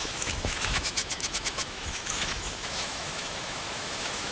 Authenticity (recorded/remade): remade